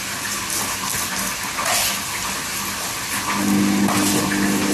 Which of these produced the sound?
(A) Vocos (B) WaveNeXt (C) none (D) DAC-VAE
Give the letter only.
C